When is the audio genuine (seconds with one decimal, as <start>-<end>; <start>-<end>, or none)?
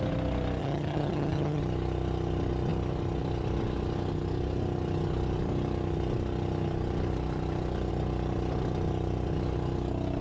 0.0-0.6; 1.6-10.2